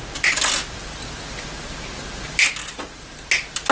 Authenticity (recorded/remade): recorded